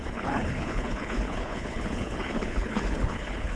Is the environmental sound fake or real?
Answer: fake